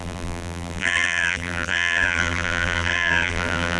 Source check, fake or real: fake